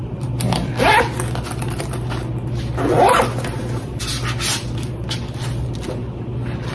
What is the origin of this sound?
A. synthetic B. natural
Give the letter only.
B